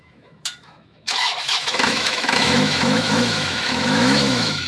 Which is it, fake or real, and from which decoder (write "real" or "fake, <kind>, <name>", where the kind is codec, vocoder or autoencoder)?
fake, autoencoder, DAC-VAE